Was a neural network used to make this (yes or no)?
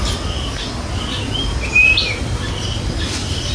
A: no